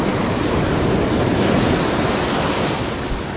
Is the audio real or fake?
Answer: real